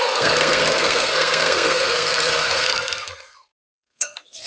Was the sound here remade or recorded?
remade